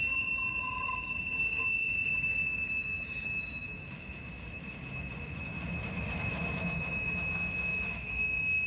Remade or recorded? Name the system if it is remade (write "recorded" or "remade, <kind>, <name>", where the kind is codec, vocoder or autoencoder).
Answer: remade, autoencoder, DAC-VAE